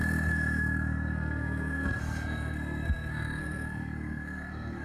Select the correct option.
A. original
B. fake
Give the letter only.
B